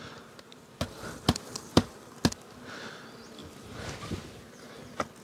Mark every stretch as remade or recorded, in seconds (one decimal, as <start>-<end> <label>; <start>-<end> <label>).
0.0-1.6 recorded; 1.6-2.1 remade; 2.1-5.2 recorded